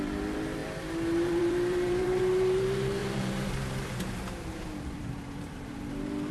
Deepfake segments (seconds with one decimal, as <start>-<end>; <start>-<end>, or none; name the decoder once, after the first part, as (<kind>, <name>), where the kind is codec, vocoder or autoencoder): 0.0-6.3 (vocoder, BigVGAN v2)